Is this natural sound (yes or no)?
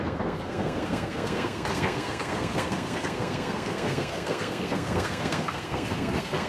no